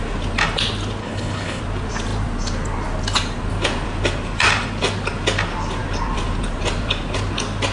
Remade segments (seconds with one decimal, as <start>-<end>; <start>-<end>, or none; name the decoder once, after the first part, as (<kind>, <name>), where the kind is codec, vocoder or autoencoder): 1.0-1.6 (codec, HILCodec)